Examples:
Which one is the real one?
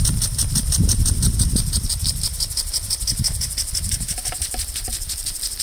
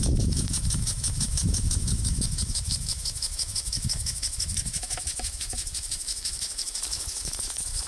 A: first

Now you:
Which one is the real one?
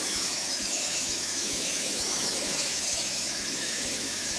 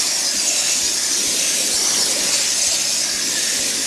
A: second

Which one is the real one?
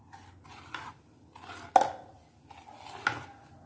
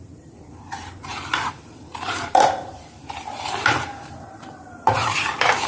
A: first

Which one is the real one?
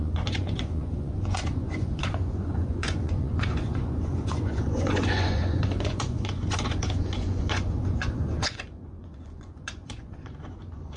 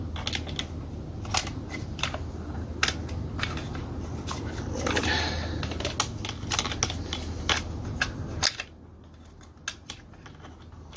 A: second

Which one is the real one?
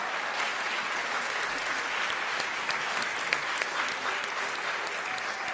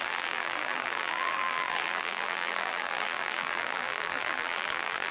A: first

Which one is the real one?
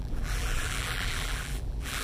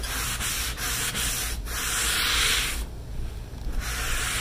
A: second